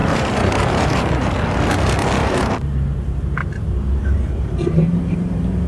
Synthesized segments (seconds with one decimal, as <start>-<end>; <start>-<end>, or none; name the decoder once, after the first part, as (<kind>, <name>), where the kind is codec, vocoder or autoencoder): 0.0-1.3 (vocoder, BigVGAN v2); 2.2-5.7

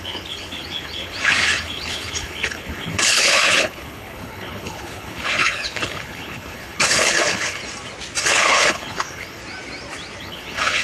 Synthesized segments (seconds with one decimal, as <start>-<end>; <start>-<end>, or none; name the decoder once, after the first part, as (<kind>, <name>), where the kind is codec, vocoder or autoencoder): 0.0-7.6 (codec, HILCodec); 8.2-9.4; 10.2-10.8

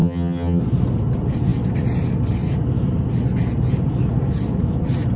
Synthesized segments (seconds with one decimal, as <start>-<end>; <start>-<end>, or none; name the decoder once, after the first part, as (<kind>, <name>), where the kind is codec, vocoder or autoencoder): 0.0-0.6 (vocoder, HiFi-GAN)

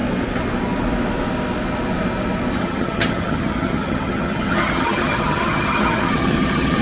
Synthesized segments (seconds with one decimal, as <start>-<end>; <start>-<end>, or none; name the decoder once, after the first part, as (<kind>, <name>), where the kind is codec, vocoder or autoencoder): 2.6-6.8 (vocoder, HiFi-GAN)

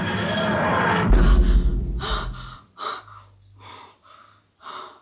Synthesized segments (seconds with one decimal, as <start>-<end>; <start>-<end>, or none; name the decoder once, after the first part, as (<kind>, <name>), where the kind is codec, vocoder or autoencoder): none

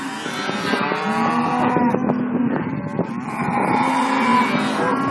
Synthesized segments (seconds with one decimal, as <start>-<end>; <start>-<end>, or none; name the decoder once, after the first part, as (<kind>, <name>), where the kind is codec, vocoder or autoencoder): none